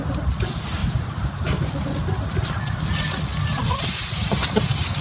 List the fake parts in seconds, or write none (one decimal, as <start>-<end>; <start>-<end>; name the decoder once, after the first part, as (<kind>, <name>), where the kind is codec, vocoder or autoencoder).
0.8-1.4 (vocoder, BigVGAN v2); 3.5-5.0